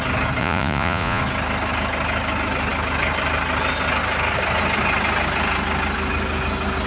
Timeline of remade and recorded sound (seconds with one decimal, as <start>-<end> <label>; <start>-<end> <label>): 0.0-0.4 recorded; 0.4-1.2 remade; 1.2-6.9 recorded